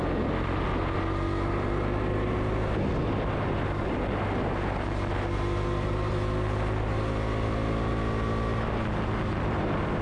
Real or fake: real